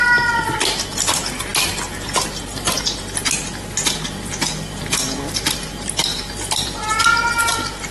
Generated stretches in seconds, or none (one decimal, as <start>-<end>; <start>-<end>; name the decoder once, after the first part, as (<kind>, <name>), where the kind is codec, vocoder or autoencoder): 6.1-6.9 (vocoder, BigVGAN v2)